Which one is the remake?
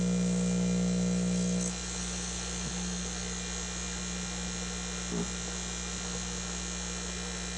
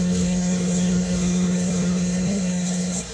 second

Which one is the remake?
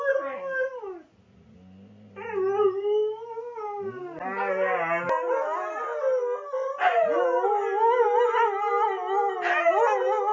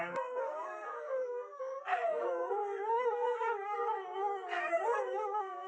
second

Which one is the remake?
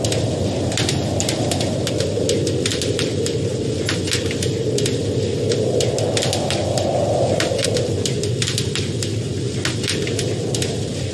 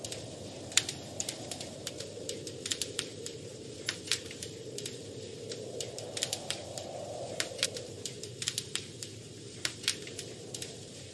second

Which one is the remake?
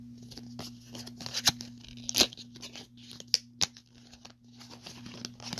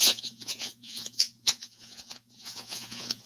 second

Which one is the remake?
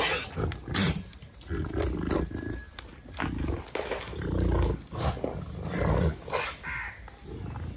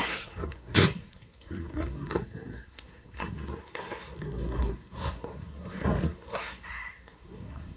second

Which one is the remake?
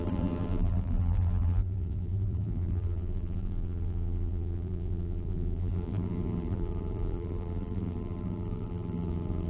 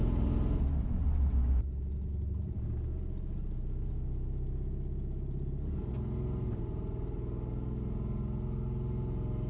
first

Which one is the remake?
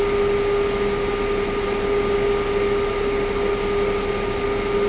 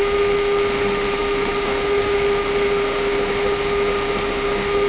second